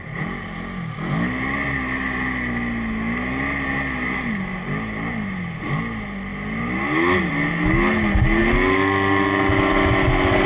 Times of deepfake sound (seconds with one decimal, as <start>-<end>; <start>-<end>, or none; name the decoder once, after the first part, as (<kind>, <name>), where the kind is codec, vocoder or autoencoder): none